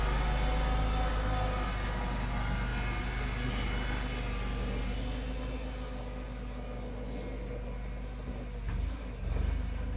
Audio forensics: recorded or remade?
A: recorded